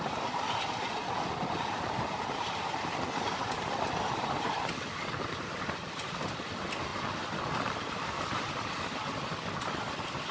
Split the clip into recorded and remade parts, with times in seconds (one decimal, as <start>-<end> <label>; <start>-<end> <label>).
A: 0.0-10.3 recorded